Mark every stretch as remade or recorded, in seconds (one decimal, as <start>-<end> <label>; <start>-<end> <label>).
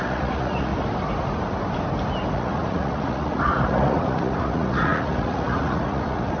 0.0-0.7 remade; 0.7-2.3 recorded; 2.3-6.4 remade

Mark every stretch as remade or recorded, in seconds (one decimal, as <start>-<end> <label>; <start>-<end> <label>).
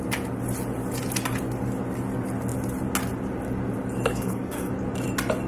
0.0-4.1 recorded; 4.1-4.7 remade; 4.7-5.5 recorded